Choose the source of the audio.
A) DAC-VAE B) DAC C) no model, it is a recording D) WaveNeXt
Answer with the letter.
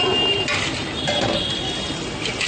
C